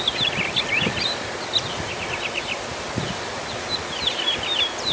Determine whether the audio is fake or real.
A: real